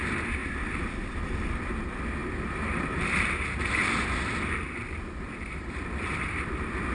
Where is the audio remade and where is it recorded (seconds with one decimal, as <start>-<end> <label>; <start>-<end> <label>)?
0.0-0.4 recorded; 0.4-1.6 remade; 1.6-2.2 recorded; 2.2-3.4 remade; 3.4-3.8 recorded; 3.8-6.9 remade